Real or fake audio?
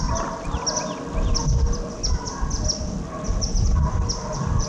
fake